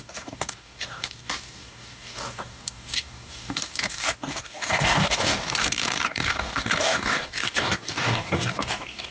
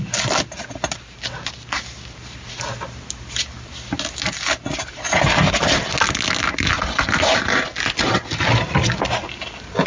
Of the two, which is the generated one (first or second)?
first